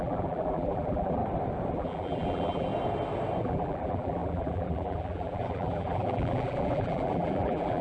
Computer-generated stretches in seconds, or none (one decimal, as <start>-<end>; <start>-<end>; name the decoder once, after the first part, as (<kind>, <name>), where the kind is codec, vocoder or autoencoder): 0.0-1.2 (vocoder, BigVGAN v2); 1.7-2.7; 3.4-7.8